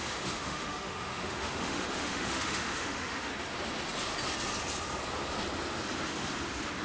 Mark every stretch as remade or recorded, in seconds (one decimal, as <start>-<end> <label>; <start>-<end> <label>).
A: 0.0-3.3 remade; 3.3-6.8 recorded